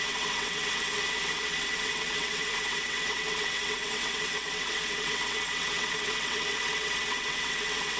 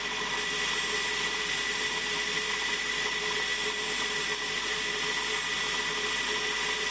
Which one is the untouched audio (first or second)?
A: second